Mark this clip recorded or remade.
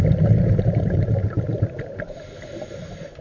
recorded